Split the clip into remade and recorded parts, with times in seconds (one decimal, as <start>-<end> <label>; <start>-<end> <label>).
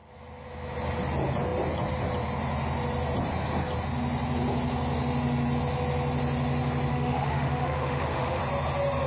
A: 0.0-6.9 recorded; 6.9-8.4 remade; 8.4-9.1 recorded